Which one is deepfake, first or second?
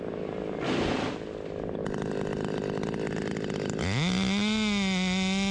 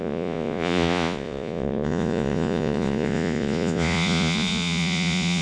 second